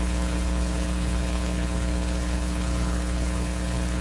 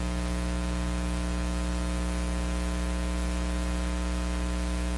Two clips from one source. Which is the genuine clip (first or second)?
second